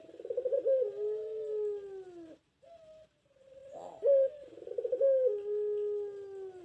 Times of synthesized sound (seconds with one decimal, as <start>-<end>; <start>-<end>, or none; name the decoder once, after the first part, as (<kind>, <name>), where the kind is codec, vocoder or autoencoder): none